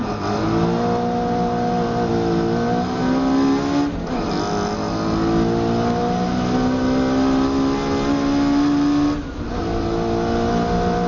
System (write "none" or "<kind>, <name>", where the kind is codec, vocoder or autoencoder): none